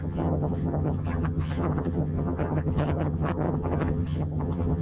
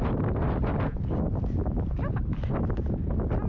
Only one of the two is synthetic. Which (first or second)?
first